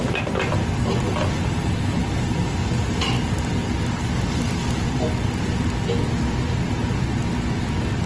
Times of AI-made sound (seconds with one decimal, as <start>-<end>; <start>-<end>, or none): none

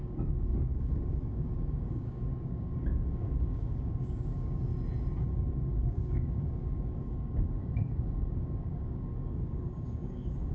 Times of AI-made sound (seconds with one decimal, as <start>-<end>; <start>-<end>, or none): 0.0-4.7; 5.3-10.5

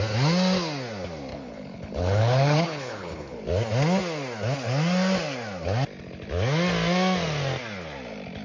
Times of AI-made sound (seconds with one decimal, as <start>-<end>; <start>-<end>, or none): 1.3-3.4